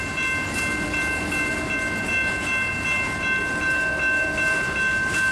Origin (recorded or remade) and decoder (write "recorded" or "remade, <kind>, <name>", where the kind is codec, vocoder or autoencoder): recorded